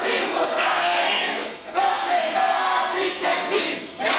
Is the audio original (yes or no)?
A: no